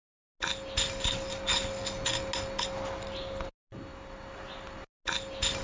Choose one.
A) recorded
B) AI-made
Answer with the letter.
A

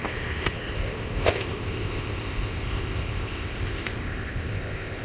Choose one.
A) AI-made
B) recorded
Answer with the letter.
A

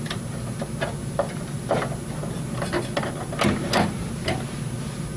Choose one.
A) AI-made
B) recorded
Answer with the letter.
B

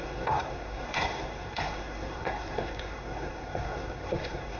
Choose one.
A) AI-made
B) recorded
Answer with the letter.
A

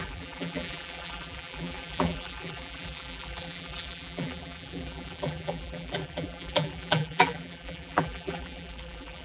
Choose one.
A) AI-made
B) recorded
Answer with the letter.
A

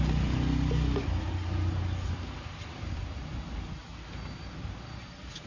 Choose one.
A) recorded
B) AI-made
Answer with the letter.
A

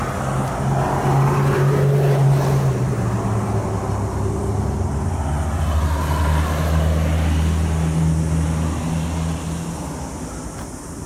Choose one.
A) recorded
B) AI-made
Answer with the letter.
A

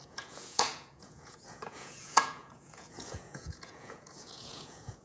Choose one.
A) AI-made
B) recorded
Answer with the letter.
A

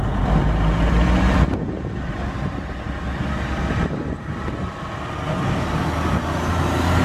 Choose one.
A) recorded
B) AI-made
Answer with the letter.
A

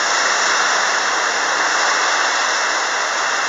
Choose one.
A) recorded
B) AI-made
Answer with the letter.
A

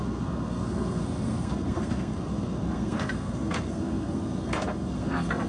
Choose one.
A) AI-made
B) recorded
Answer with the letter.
A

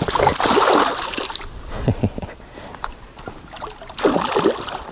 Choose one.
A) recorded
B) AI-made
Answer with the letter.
A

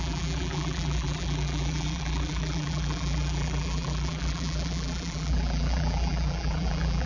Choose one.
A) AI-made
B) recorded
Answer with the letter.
A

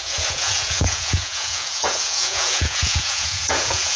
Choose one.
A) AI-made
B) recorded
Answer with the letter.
A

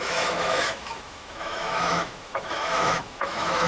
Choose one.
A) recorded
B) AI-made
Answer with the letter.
B